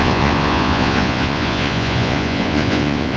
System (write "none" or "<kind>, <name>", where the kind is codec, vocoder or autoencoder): vocoder, Vocos